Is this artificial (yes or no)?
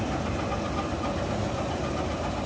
no